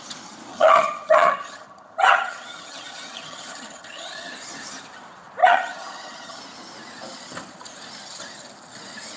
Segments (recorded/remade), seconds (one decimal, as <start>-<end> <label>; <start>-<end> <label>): 0.0-0.5 recorded; 0.5-4.3 remade; 4.3-5.4 recorded; 5.4-6.4 remade; 6.4-9.2 recorded